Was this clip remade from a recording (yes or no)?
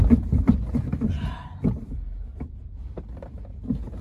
no